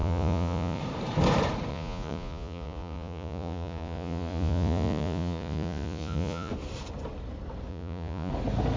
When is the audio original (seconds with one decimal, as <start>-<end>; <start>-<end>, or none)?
0.8-1.7; 6.5-7.7; 8.3-8.8